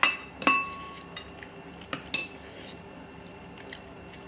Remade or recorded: recorded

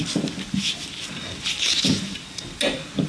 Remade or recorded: recorded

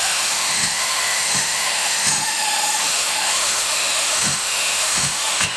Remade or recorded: remade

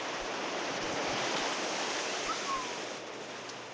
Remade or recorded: recorded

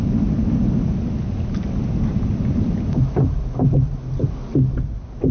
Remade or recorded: recorded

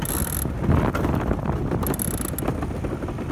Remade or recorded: recorded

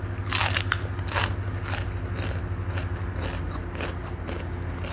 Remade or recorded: recorded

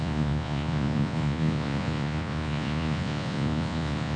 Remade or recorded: remade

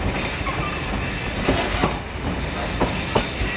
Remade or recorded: recorded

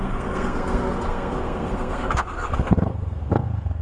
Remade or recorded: remade